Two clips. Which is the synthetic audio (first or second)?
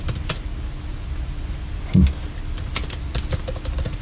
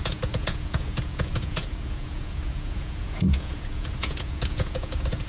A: second